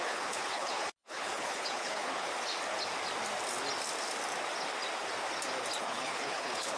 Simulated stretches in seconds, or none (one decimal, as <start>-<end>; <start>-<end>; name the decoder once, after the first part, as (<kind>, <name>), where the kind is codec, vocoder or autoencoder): 0.0-2.3 (codec, HILCodec); 5.8-6.8